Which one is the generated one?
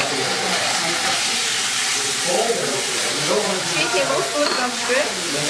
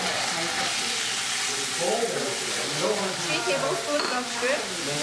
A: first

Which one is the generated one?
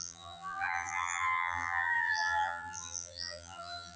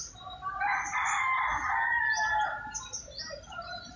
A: first